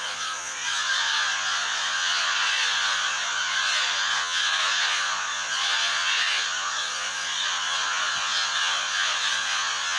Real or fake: fake